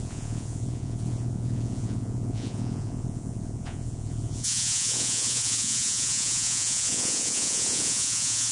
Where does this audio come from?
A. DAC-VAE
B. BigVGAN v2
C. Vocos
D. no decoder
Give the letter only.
C